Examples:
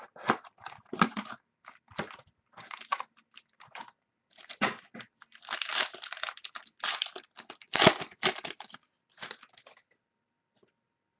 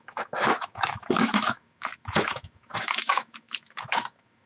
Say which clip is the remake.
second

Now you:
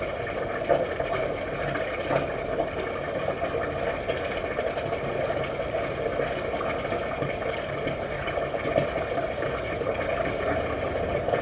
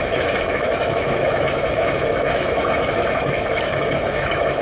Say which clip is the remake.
second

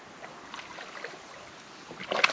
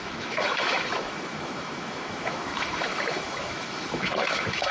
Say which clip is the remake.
second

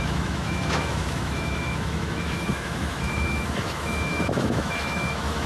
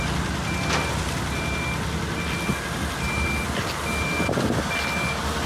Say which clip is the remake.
first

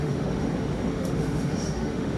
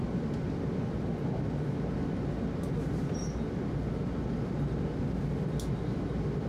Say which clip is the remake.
first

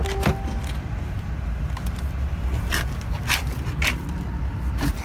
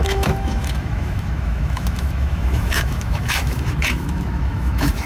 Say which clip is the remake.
second